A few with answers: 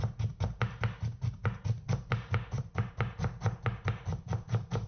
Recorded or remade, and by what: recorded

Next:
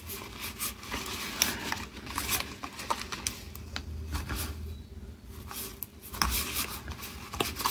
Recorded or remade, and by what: recorded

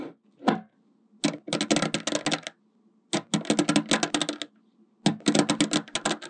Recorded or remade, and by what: recorded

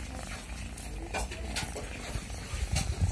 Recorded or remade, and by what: recorded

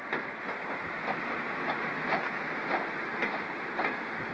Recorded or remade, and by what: recorded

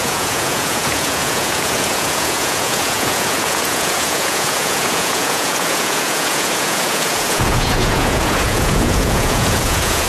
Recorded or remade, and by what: remade, vocoder, Vocos